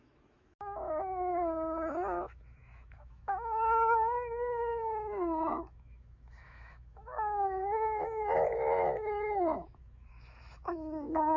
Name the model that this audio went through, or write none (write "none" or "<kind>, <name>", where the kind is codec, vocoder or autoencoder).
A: autoencoder, DAC-VAE